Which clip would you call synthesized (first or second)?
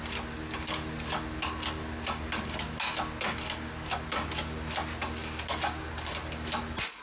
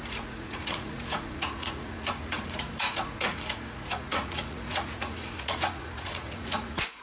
second